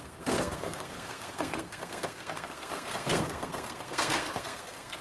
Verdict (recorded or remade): remade